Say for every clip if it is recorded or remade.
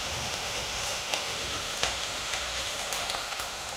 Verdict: remade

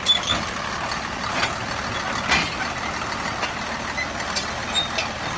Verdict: recorded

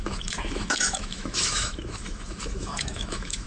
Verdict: remade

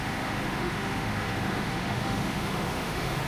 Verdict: remade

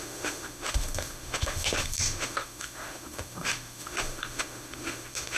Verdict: remade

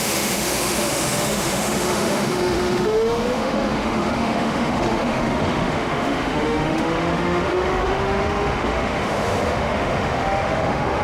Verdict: remade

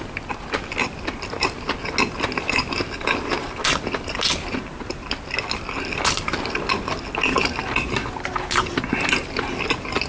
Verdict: recorded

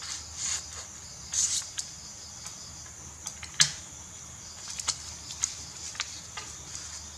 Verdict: recorded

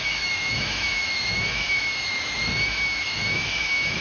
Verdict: remade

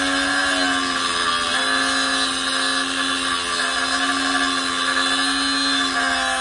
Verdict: recorded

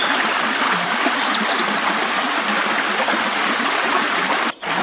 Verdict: recorded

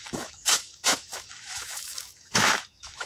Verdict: remade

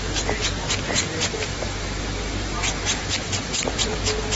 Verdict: recorded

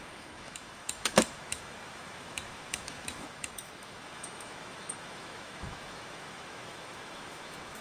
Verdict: remade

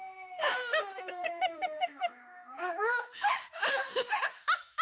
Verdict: remade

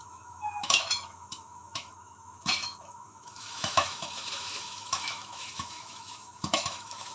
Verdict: remade